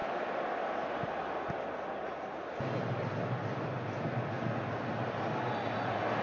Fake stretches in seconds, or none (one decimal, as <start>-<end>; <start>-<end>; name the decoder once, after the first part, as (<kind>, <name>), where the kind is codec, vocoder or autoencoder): none